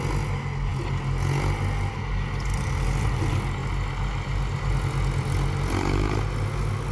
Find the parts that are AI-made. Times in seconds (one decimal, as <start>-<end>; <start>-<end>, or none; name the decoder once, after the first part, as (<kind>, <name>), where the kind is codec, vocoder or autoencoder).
none